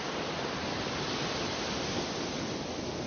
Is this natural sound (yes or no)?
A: no